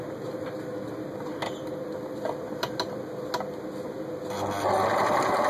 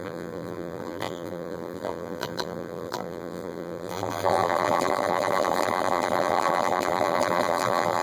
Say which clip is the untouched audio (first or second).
first